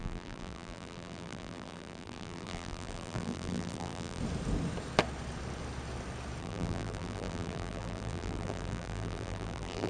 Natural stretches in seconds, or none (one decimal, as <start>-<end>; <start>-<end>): 4.2-6.4